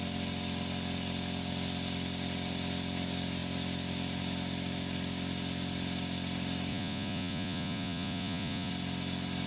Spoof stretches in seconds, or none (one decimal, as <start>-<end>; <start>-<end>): 6.7-8.7